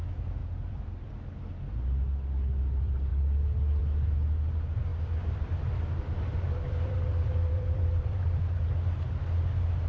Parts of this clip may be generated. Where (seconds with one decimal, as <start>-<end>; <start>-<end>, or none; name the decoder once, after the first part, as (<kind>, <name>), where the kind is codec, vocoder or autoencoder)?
0.4-1.1 (vocoder, BigVGAN v2); 4.9-8.5